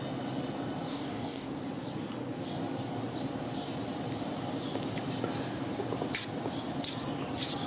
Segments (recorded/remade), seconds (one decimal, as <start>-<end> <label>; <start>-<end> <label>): 0.0-0.9 recorded; 0.9-1.5 remade; 1.5-7.7 recorded